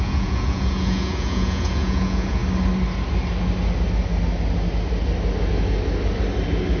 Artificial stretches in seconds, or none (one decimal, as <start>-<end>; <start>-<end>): 0.0-2.4